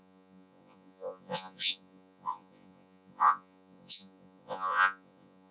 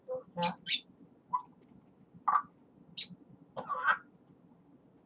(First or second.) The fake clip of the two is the first